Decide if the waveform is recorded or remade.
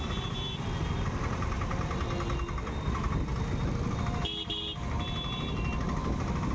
recorded